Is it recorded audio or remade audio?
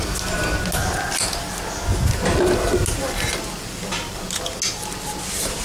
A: recorded